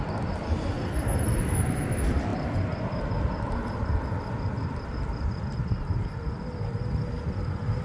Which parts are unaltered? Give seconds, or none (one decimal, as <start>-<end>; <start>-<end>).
0.0-7.8